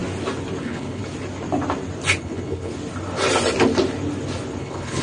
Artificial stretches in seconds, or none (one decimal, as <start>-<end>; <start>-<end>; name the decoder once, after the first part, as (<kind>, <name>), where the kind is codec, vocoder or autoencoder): 0.6-1.0 (codec, HILCodec); 2.2-2.7; 4.6-5.0

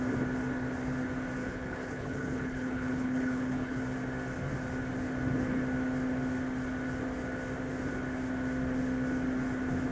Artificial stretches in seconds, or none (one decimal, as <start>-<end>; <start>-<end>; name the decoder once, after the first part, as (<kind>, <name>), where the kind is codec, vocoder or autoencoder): 1.4-3.8 (codec, HILCodec)

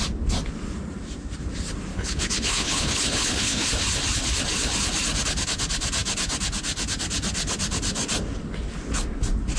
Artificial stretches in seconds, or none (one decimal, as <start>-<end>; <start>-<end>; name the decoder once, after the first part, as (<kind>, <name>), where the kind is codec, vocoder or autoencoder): 1.9-3.7 (codec, HILCodec)